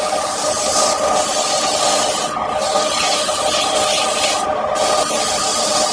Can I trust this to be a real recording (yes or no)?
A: yes